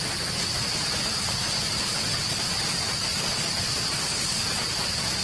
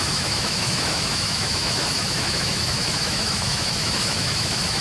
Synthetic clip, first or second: second